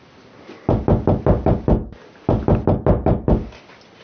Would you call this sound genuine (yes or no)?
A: yes